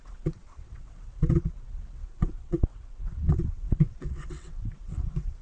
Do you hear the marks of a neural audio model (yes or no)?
yes